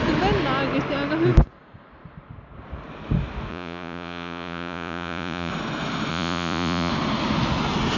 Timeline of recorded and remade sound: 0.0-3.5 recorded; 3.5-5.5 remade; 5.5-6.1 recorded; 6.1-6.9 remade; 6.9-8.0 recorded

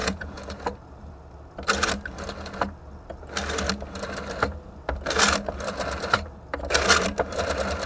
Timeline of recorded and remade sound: 0.0-0.6 remade; 0.6-7.9 recorded